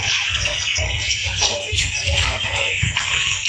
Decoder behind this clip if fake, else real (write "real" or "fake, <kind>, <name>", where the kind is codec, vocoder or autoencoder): fake, codec, SNAC